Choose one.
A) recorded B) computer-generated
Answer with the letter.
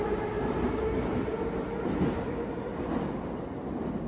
A